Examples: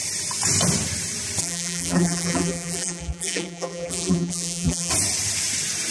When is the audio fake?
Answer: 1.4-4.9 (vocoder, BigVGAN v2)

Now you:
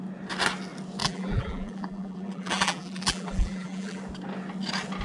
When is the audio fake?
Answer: 1.0-4.0 (vocoder, BigVGAN v2)

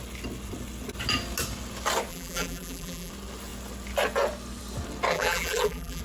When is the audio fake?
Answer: 2.1-3.1 (vocoder, BigVGAN v2); 5.1-6.0

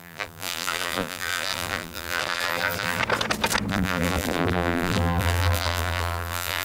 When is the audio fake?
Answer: 0.0-3.0 (vocoder, BigVGAN v2); 3.7-6.6

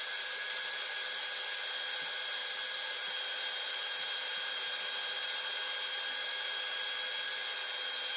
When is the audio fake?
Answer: 2.4-6.6 (vocoder, BigVGAN v2)

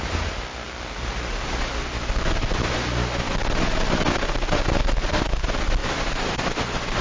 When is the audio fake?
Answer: none

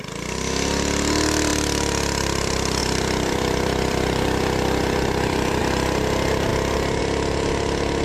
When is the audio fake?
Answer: 2.8-5.6 (vocoder, BigVGAN v2)

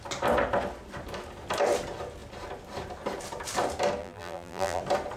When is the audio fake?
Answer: 4.0-4.8 (vocoder, BigVGAN v2)